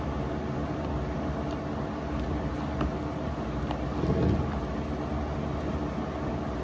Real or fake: real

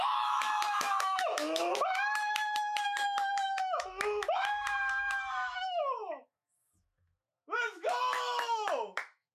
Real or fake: fake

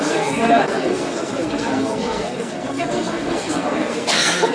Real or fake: fake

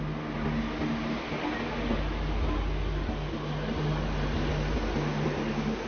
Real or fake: real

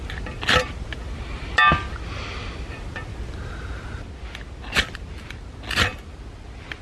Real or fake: real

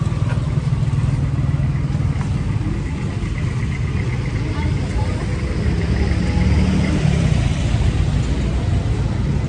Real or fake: real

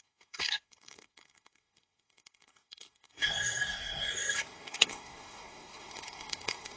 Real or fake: fake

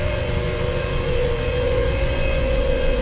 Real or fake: fake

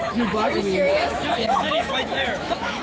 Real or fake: fake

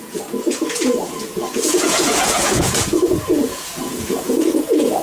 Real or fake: fake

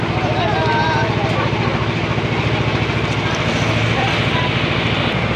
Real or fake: real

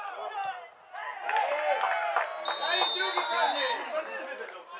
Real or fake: real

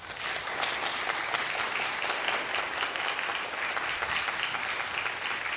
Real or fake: real